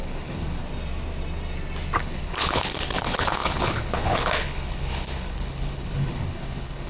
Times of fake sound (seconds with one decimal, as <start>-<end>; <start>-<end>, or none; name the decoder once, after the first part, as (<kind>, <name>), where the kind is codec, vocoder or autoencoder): 0.0-0.6 (codec, HILCodec); 2.0-6.9